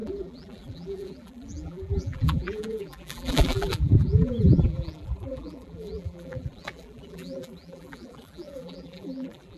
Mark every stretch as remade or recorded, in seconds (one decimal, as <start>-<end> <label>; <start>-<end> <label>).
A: 0.0-9.6 remade